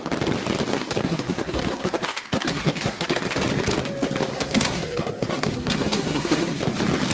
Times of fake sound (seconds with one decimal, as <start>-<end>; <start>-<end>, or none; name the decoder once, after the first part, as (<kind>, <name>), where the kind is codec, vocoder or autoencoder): 0.7-3.2 (codec, SNAC); 4.3-6.6